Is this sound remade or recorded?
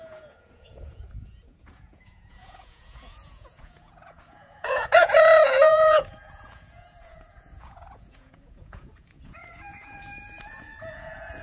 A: remade